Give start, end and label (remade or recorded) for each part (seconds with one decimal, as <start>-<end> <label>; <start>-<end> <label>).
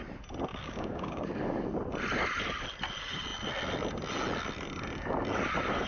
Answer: 0.0-0.5 recorded; 0.5-1.3 remade; 1.3-5.9 recorded